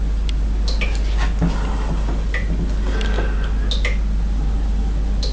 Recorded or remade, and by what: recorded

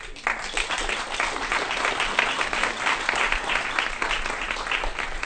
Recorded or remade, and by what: recorded